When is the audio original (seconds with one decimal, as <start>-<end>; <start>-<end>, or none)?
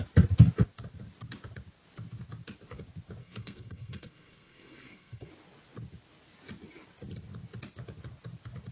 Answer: 0.0-3.2; 5.3-8.7